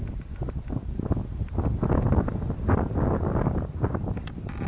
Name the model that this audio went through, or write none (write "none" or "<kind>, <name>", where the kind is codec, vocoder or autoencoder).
none